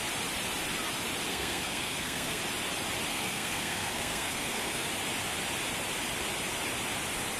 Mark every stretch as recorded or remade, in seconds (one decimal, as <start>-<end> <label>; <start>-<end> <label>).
0.0-1.3 recorded; 1.3-2.4 remade; 2.4-3.1 recorded; 3.1-4.9 remade; 4.9-7.4 recorded